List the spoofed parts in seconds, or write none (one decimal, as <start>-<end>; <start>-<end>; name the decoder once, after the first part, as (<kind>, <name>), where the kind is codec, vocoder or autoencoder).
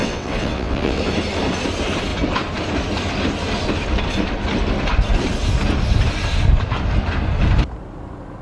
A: 0.0-1.0 (vocoder, WaveNeXt)